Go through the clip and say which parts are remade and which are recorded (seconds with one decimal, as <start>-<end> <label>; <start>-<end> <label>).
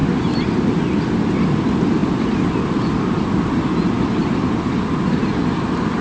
0.0-6.0 recorded